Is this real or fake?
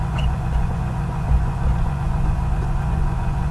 fake